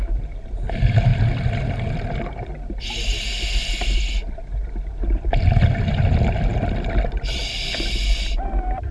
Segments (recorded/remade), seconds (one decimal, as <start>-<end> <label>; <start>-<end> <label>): 0.0-8.9 recorded